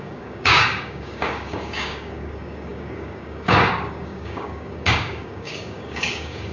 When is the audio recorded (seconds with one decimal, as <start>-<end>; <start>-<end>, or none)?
none